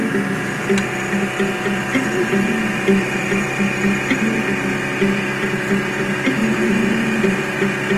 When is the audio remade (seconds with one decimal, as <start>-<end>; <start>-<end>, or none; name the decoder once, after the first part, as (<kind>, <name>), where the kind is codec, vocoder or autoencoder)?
1.9-3.6 (vocoder, BigVGAN v2); 6.4-7.5